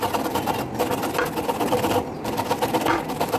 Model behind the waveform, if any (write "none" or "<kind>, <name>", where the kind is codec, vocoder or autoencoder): none